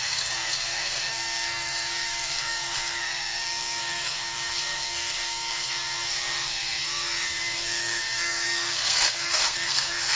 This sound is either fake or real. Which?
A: fake